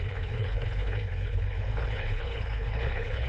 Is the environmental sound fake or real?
fake